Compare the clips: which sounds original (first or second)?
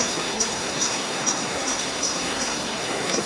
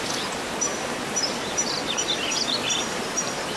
second